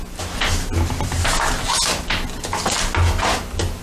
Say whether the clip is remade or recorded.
recorded